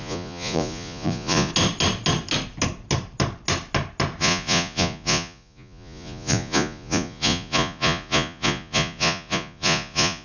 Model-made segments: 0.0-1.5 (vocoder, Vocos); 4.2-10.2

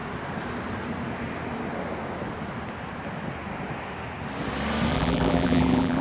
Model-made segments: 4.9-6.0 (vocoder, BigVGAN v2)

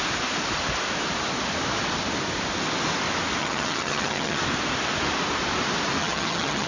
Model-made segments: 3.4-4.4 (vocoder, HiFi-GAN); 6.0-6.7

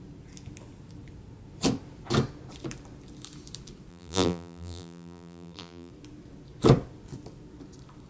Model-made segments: 3.9-5.9 (vocoder, BigVGAN v2)

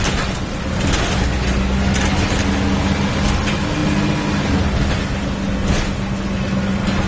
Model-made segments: none